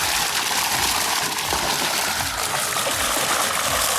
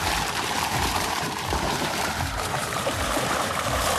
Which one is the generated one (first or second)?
second